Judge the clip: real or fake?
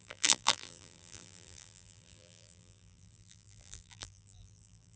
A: fake